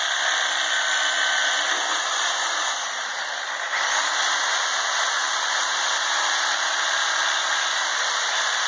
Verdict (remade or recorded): recorded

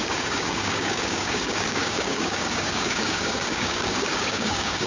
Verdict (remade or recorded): remade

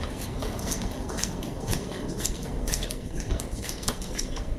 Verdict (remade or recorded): remade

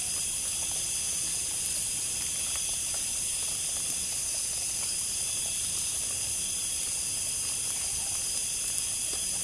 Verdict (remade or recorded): recorded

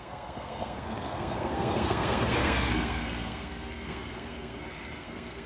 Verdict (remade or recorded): remade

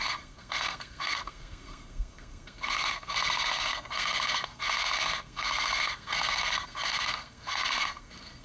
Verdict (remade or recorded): remade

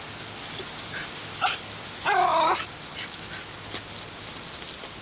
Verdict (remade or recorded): recorded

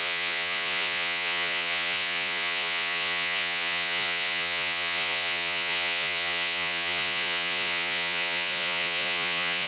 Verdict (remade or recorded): remade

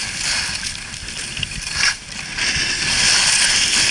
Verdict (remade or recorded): recorded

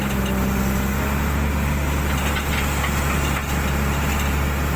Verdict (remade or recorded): recorded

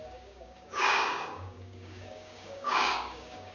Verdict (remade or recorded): remade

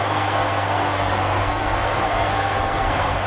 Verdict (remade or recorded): remade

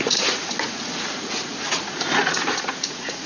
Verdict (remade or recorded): remade